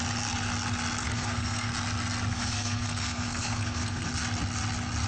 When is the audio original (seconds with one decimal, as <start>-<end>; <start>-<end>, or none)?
0.0-1.0; 1.7-2.3; 4.1-5.1